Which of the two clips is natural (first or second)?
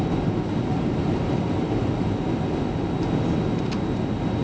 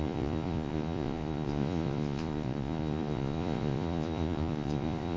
first